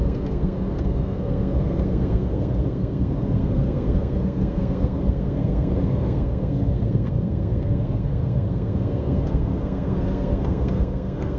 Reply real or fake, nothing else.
fake